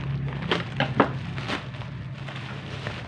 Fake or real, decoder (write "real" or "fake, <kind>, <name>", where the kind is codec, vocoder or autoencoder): real